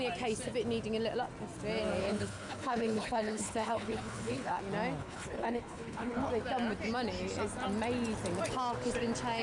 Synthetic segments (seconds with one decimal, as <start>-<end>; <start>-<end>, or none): 2.0-4.6; 5.0-6.3